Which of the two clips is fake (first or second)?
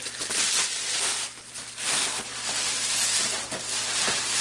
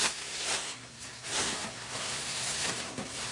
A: second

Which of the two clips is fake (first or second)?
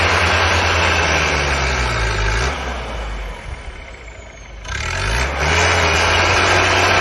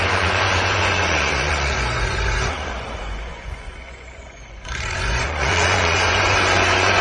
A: second